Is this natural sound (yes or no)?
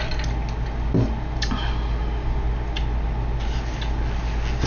yes